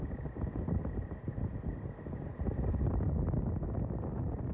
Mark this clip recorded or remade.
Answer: recorded